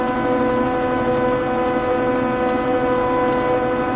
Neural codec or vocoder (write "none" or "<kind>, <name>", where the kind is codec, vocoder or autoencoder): none